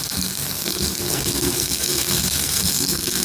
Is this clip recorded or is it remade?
remade